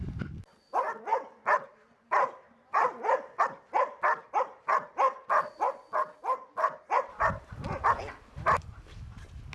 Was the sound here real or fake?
real